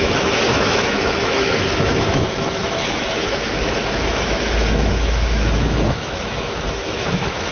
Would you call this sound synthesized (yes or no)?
yes